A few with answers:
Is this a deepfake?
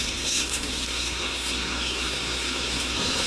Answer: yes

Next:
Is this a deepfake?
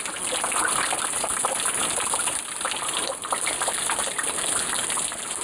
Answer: no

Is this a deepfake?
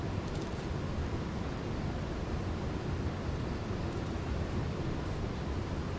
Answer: yes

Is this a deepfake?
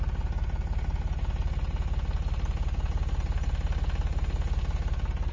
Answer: no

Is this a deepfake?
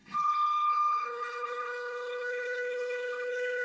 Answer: yes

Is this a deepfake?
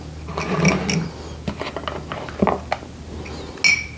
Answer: no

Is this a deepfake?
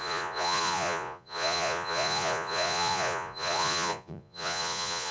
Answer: yes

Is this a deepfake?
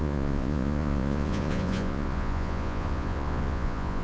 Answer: yes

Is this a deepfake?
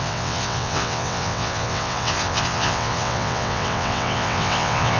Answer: yes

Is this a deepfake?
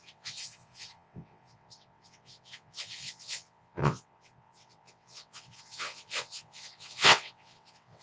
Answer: yes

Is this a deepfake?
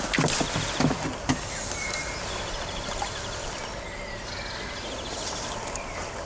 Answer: no